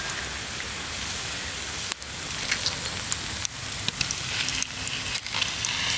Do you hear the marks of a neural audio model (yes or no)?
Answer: no